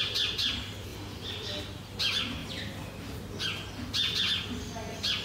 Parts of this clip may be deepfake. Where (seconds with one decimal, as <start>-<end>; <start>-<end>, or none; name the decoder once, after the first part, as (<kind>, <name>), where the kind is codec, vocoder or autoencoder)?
0.9-1.6 (vocoder, BigVGAN v2)